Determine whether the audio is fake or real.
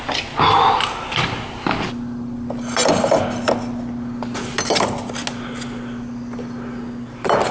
real